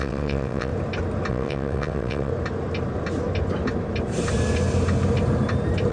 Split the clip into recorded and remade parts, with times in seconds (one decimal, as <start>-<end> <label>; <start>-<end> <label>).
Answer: 0.0-0.7 remade; 0.7-1.3 recorded; 1.3-2.3 remade; 2.3-5.9 recorded